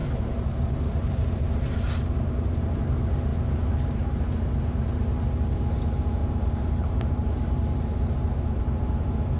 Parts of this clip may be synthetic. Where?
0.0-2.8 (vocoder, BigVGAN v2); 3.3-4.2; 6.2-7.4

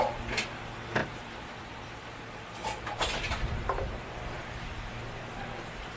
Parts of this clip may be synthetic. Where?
1.0-3.0 (vocoder, BigVGAN v2)

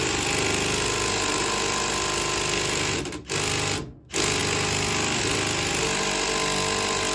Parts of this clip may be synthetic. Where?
none

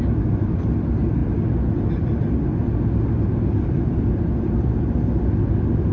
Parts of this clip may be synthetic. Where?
0.0-1.2 (vocoder, BigVGAN v2); 3.3-5.9

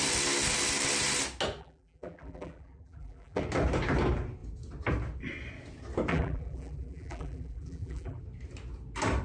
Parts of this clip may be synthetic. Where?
1.6-3.4 (vocoder, BigVGAN v2); 6.1-8.2